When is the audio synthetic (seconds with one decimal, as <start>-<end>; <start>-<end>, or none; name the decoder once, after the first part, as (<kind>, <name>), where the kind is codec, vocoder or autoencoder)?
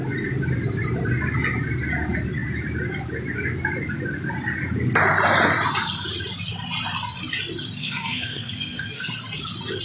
7.8-9.1 (codec, SNAC)